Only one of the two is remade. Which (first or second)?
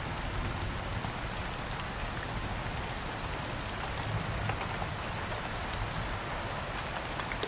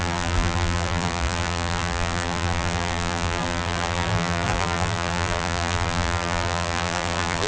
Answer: second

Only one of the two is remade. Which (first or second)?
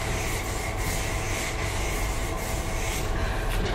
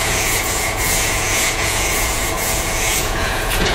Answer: second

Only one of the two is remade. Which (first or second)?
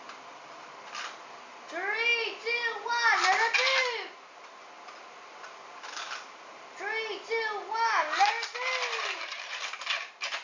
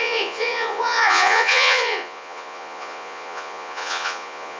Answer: second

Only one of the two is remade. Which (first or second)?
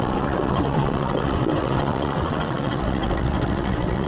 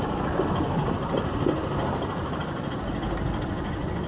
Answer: first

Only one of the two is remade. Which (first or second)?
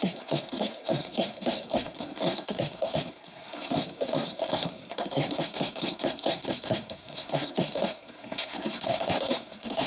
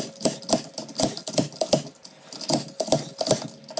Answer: first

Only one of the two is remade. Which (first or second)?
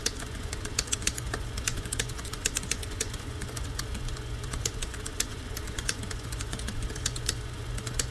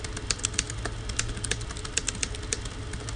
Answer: first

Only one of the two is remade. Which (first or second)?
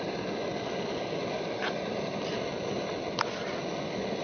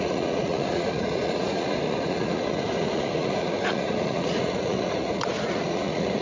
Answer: second